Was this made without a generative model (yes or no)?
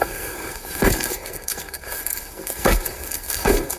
no